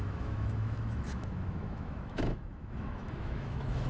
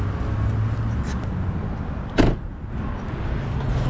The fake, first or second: first